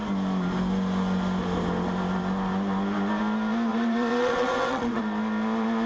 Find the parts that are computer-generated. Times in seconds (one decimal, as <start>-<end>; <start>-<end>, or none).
3.7-5.0